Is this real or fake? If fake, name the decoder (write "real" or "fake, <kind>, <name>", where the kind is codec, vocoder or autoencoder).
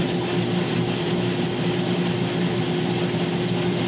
real